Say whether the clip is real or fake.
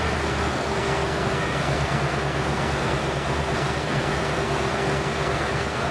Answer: fake